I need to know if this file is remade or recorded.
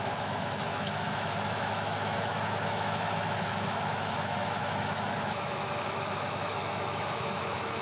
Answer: remade